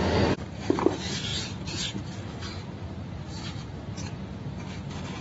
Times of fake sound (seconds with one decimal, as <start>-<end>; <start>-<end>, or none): none